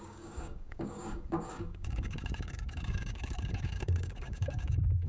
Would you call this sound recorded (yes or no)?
no